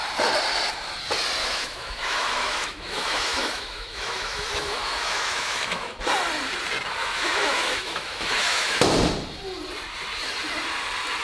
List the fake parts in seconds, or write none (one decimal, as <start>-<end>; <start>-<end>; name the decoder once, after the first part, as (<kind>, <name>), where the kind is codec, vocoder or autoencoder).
1.4-6.0 (autoencoder, DAC-VAE); 7.0-8.9